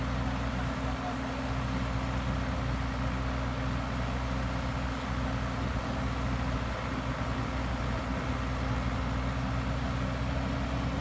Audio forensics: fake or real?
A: real